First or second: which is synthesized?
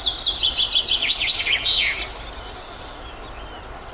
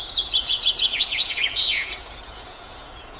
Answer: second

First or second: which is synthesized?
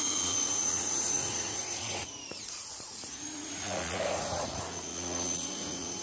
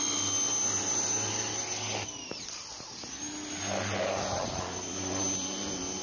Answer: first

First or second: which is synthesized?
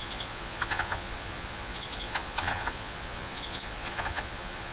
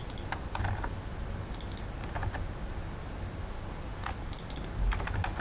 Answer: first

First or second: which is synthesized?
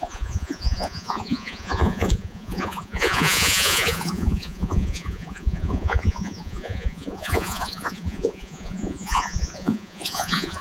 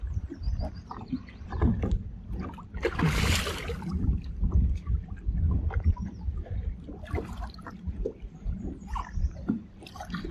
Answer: first